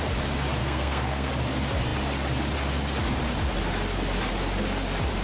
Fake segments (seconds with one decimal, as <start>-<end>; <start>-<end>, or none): 0.6-1.3